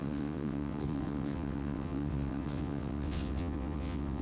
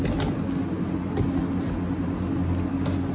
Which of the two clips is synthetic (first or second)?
first